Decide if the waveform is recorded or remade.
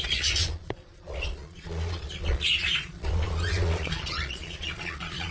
remade